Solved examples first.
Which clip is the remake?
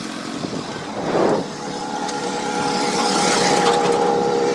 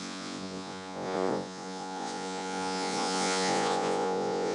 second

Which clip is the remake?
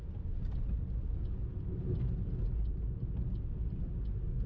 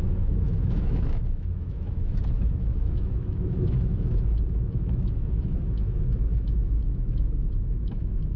second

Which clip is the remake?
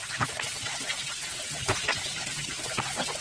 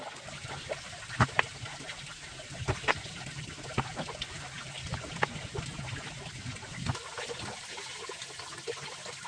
first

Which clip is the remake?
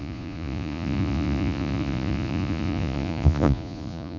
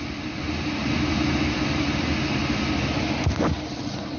first